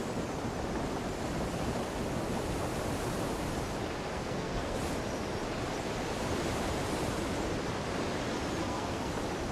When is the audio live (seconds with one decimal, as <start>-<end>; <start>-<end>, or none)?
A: 0.0-4.1; 4.8-8.6; 9.1-9.5